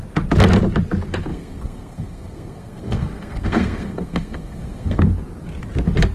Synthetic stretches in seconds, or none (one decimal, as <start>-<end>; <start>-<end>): 1.3-5.0